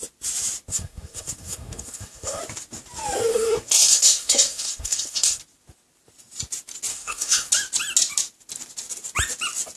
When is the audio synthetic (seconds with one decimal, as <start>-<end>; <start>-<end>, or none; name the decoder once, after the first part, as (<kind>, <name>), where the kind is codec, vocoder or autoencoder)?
0.7-2.4 (codec, SNAC); 3.3-5.4; 6.9-7.5